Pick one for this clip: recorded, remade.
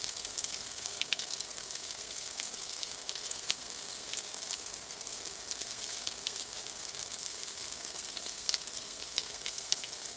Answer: remade